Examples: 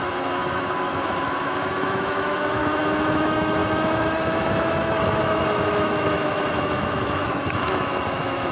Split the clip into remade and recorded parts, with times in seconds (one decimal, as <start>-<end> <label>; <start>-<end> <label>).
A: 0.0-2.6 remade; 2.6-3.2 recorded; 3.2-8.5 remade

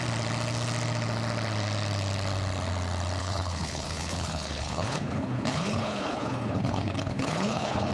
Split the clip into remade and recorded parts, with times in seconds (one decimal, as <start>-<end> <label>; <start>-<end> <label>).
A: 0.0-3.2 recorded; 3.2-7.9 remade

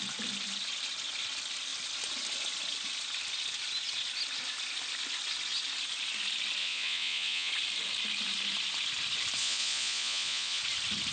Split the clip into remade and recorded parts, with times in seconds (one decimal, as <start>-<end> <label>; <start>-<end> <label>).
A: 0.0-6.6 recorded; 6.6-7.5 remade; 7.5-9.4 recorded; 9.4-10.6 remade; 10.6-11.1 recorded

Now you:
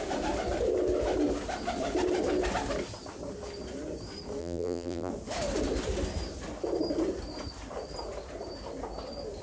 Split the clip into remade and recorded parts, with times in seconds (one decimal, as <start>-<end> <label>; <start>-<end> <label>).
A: 0.0-4.4 recorded; 4.4-5.1 remade; 5.1-9.4 recorded

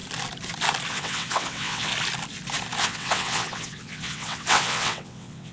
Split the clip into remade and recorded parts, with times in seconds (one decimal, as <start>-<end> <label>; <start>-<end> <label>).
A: 0.0-0.9 recorded; 0.9-1.9 remade; 1.9-2.8 recorded; 2.8-5.5 remade

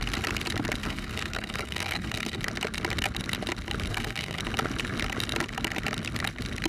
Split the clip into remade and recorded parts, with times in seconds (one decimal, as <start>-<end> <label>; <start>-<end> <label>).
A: 0.0-0.8 recorded; 0.8-2.4 remade; 2.4-3.9 recorded; 3.9-4.4 remade; 4.4-6.7 recorded

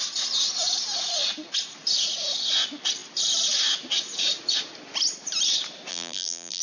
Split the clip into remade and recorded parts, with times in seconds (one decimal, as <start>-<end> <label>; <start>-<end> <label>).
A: 0.0-5.9 recorded; 5.9-6.6 remade

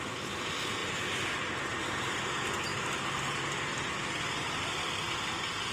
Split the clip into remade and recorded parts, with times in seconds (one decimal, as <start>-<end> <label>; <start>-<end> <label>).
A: 0.0-5.7 recorded